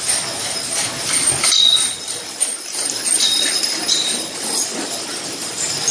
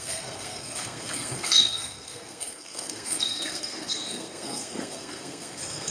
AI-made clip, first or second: second